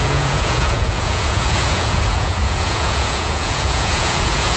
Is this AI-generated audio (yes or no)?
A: yes